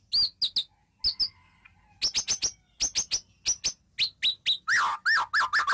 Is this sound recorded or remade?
recorded